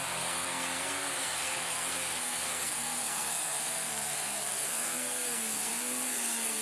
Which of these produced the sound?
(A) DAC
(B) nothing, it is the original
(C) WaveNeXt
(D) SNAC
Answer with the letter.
D